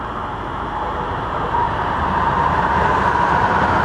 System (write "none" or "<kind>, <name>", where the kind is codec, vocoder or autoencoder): vocoder, BigVGAN v2